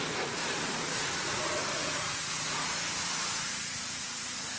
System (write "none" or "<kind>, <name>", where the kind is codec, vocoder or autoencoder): vocoder, Vocos